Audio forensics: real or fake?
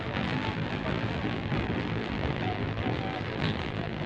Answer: fake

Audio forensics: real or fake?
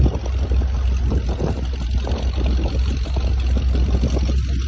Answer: real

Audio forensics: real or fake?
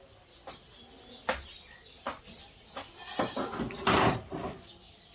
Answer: real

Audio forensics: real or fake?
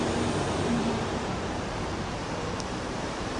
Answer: fake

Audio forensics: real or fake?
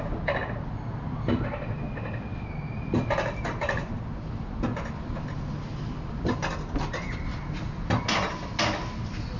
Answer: real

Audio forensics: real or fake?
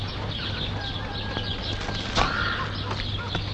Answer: real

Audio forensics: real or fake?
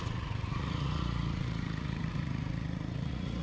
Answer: fake